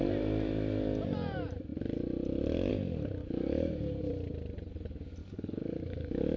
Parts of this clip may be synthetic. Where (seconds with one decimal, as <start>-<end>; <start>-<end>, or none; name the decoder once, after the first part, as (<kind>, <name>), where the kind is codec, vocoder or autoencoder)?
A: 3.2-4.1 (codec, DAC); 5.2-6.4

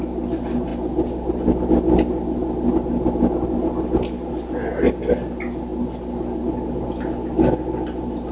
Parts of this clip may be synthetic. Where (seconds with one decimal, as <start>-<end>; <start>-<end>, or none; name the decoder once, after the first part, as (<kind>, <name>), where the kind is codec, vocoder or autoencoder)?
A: none

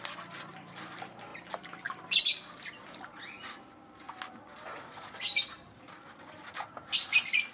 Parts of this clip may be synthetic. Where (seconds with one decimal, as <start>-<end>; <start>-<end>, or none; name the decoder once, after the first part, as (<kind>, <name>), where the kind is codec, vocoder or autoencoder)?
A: none

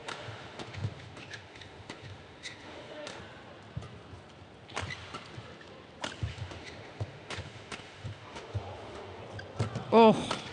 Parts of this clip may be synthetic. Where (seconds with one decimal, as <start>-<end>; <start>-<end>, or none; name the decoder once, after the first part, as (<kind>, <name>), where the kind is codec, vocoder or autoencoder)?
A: 0.0-3.2 (autoencoder, DAC-VAE); 6.3-9.2

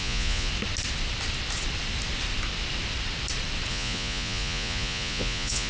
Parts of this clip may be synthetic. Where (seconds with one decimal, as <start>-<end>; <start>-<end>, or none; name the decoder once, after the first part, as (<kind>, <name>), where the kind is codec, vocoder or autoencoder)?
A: 0.0-0.5 (vocoder, Vocos); 3.7-5.7

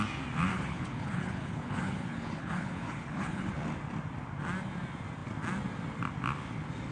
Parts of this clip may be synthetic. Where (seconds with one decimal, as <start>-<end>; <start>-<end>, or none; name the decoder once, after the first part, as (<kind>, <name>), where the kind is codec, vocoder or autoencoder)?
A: 0.5-3.5 (codec, HILCodec)

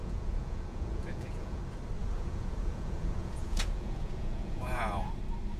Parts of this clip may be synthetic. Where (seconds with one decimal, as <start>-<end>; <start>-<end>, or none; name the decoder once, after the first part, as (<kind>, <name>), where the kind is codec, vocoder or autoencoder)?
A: 0.0-1.6 (vocoder, Vocos); 2.0-5.1